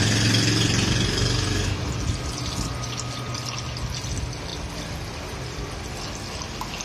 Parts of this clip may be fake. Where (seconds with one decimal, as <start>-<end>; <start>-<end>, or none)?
none